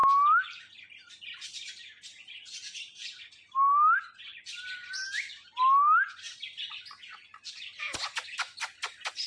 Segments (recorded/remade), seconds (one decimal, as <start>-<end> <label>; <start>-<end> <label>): 0.0-9.3 recorded